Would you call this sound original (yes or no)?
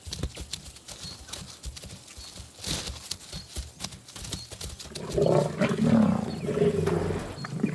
yes